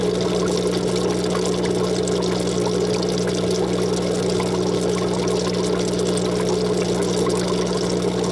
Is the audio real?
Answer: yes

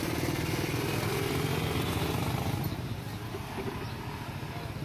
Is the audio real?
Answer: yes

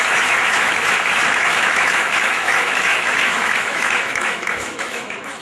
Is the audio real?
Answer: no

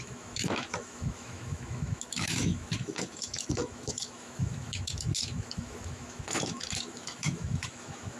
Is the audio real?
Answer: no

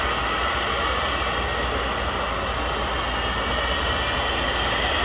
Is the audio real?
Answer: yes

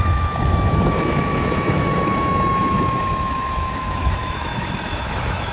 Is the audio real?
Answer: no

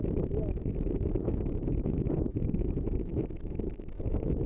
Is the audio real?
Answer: no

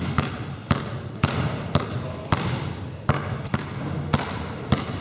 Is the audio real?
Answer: yes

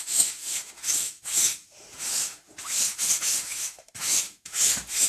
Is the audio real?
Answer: no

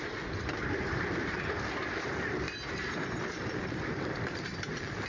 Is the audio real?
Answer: yes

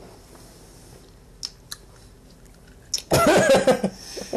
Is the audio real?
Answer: yes